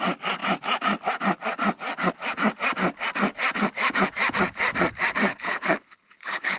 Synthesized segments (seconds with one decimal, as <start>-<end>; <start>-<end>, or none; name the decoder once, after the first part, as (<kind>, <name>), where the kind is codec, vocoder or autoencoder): 5.3-6.6 (codec, HILCodec)